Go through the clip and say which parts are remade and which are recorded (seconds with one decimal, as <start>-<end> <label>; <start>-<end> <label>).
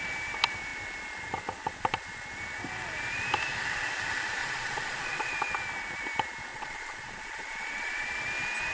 0.0-4.4 recorded; 4.4-5.3 remade; 5.3-6.5 recorded; 6.5-8.1 remade; 8.1-8.7 recorded